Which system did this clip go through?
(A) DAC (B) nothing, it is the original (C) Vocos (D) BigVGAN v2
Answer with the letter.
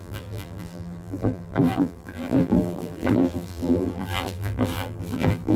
D